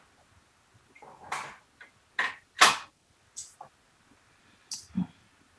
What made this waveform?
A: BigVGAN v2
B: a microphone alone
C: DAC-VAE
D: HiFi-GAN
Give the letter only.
B